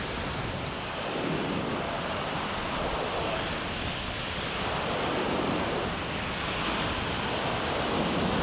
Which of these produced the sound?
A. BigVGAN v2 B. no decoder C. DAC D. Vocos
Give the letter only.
B